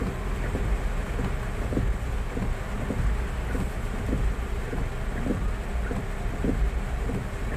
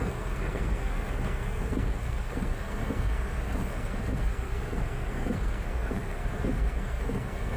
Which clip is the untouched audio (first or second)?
first